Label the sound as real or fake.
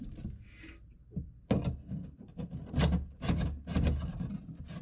real